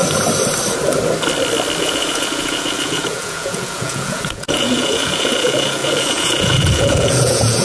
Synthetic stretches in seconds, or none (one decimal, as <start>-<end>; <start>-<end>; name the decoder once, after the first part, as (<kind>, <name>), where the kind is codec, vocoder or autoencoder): 1.8-7.6 (vocoder, Vocos)